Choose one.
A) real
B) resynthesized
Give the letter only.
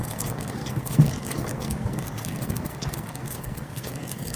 B